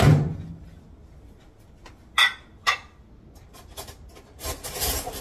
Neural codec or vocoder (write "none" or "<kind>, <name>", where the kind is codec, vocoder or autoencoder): none